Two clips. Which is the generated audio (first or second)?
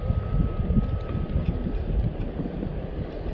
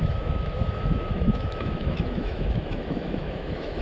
second